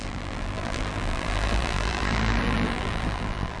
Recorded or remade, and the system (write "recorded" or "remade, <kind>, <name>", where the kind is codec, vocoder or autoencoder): remade, vocoder, BigVGAN v2